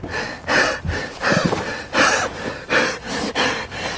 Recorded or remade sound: recorded